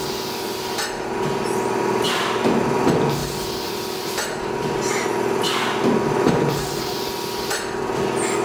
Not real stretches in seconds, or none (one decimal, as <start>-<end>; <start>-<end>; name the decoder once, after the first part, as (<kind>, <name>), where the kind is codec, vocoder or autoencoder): none